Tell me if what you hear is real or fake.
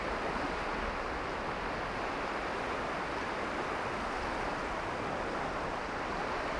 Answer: real